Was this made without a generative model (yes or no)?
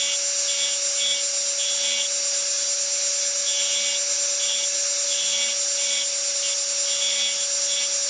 yes